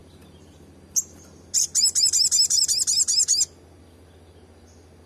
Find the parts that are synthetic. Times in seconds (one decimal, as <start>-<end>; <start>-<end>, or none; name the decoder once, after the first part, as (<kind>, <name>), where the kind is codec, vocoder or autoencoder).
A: none